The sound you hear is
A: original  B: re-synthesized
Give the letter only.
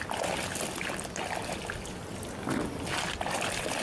A